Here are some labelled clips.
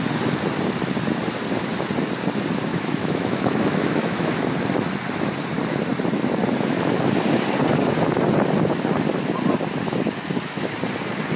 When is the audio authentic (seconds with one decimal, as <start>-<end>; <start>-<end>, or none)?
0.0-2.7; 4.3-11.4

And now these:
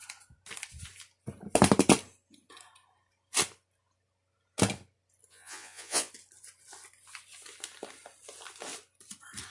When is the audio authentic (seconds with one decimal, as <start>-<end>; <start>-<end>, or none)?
0.0-5.3; 6.1-9.5

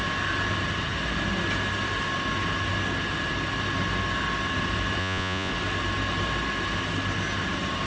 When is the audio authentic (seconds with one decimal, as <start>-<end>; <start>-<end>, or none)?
0.0-5.0; 5.5-7.9

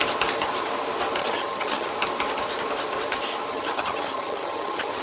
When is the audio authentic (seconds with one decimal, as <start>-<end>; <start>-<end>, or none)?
0.0-1.2; 1.9-3.5